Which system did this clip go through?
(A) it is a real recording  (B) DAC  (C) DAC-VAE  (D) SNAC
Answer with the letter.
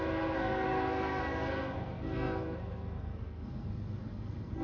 D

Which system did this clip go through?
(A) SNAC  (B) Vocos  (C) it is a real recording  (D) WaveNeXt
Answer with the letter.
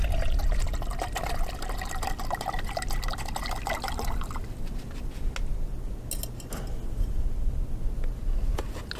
C